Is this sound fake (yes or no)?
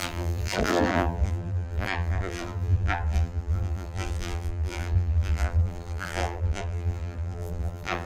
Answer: yes